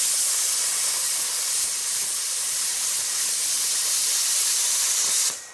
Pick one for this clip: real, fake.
real